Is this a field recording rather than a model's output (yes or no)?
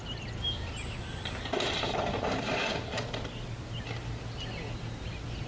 yes